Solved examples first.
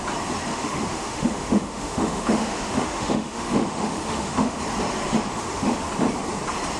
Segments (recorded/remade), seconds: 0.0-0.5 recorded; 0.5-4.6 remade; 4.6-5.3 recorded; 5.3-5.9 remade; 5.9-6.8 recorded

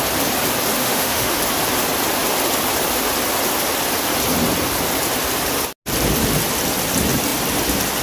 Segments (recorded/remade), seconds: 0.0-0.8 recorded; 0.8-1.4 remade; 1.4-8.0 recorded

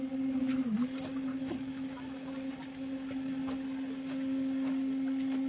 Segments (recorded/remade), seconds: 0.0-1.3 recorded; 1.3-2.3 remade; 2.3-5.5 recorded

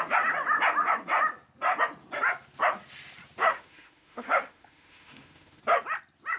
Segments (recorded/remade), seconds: 0.0-3.4 recorded; 3.4-5.6 remade; 5.6-6.4 recorded

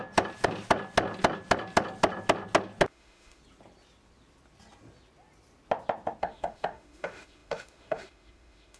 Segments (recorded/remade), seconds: 0.0-2.9 recorded; 2.9-3.4 remade; 3.4-6.2 recorded; 6.2-8.8 remade

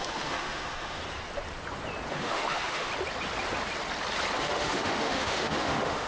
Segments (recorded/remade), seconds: 0.0-1.0 remade; 1.0-2.1 recorded; 2.1-2.9 remade; 2.9-4.4 recorded; 4.4-6.1 remade

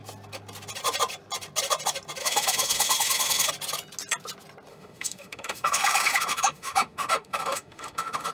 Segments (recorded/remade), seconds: 0.0-2.2 recorded; 2.2-3.5 remade; 3.5-4.7 recorded; 4.7-8.3 remade